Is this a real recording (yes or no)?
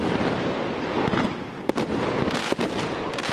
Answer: yes